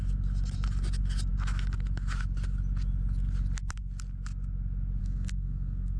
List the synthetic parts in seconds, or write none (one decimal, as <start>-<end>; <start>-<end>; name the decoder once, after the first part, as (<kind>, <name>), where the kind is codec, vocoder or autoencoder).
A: 5.0-6.0 (codec, SNAC)